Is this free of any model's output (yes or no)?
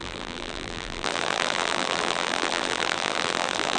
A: no